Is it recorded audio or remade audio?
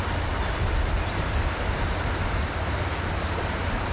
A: recorded